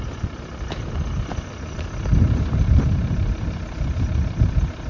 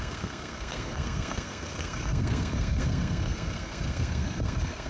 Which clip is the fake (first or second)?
second